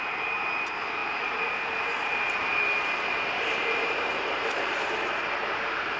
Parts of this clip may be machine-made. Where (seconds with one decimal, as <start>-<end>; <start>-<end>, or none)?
0.0-6.0